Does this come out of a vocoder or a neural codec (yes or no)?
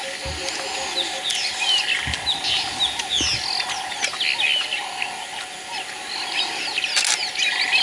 no